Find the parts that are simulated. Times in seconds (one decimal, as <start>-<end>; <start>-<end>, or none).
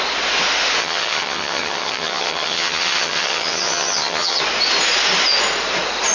0.8-4.4